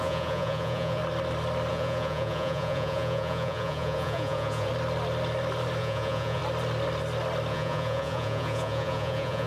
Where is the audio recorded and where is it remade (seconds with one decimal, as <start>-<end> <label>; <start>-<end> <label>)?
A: 0.0-1.0 remade; 1.0-1.7 recorded; 1.7-4.7 remade; 4.7-5.8 recorded; 5.8-6.4 remade; 6.4-7.5 recorded; 7.5-9.5 remade